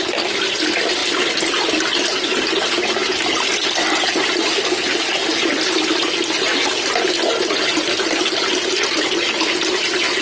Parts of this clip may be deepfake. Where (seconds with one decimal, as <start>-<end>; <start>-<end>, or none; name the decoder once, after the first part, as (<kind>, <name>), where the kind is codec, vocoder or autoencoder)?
3.0-3.5 (vocoder, BigVGAN v2)